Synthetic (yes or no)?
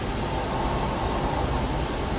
no